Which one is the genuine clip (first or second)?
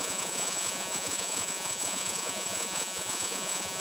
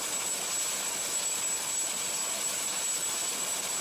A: second